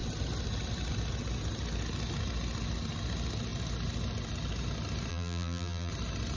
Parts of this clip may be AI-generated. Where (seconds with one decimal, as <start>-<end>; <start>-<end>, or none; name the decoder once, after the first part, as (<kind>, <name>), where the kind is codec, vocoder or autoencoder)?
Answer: 5.1-5.9 (vocoder, BigVGAN v2)